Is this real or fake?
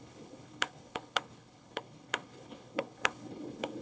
fake